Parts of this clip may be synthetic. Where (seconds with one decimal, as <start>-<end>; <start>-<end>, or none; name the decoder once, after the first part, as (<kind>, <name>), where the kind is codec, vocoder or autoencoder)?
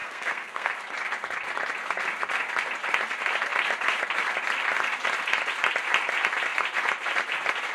0.0-0.7 (codec, SNAC)